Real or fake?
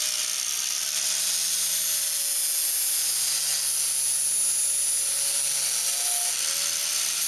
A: real